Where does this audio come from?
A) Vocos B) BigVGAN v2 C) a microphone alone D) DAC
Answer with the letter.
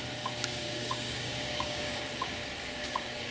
D